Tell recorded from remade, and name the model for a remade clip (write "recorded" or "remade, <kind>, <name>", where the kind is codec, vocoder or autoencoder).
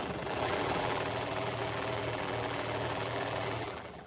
remade, vocoder, BigVGAN v2